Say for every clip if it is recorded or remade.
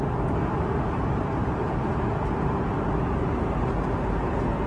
recorded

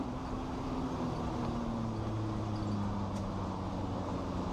recorded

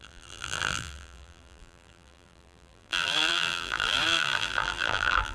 remade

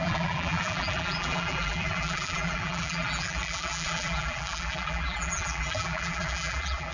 remade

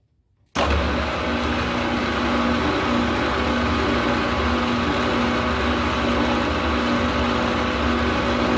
recorded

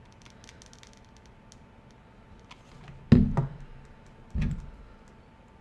recorded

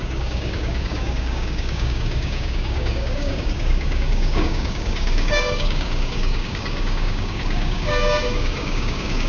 remade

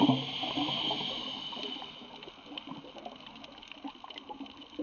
recorded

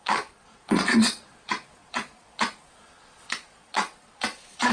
remade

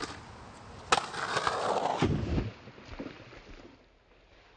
recorded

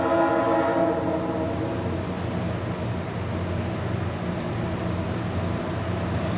recorded